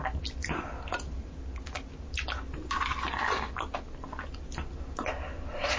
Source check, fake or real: real